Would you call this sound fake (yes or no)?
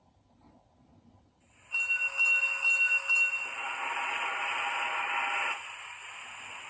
no